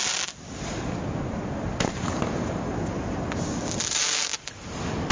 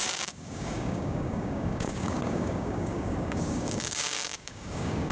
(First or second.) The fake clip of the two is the second